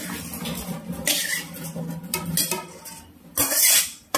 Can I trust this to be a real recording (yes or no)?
yes